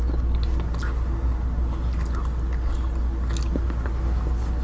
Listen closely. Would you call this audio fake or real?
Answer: real